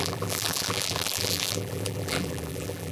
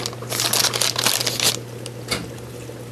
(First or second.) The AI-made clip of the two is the first